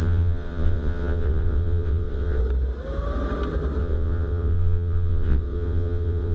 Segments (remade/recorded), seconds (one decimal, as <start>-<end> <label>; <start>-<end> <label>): 0.0-2.4 remade; 2.4-3.8 recorded; 3.8-6.3 remade